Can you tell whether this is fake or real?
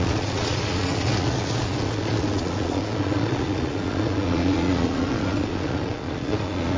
fake